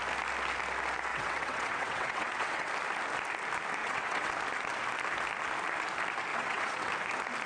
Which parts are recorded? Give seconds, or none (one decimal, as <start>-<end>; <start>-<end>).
0.0-1.1; 2.7-3.8; 4.3-6.3; 6.9-7.5